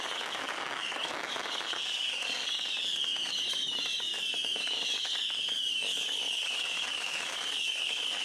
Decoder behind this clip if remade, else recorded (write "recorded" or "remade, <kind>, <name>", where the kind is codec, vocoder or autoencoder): remade, codec, DAC